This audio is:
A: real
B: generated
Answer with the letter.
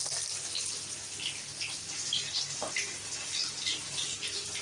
A